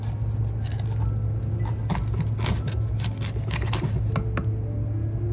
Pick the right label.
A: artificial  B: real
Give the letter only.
B